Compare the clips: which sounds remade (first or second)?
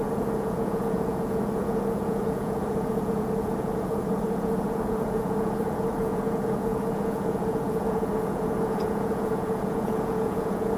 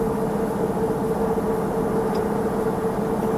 first